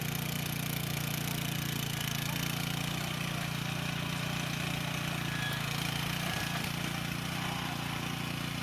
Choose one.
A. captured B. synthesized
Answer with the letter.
A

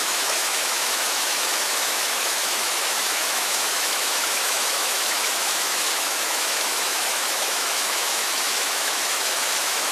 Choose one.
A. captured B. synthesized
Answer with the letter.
B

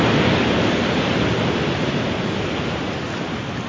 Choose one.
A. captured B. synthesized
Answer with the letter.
A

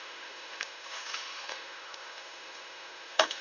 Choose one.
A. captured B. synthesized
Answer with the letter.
B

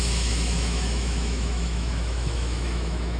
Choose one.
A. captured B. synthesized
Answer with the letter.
B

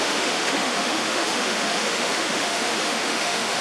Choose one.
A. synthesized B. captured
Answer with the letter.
A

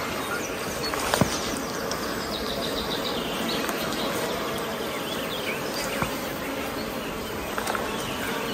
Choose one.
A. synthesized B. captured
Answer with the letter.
B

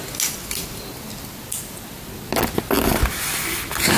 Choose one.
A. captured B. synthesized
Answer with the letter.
A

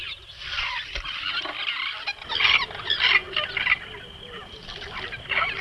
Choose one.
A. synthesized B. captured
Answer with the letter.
B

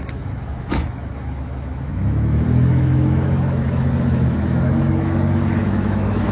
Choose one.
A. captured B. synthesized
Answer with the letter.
B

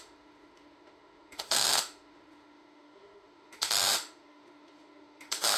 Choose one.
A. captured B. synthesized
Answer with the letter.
B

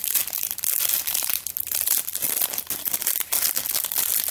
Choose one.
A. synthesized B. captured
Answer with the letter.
B